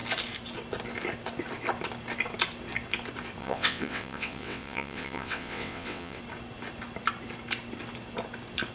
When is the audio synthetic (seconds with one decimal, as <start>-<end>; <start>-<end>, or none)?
3.4-6.2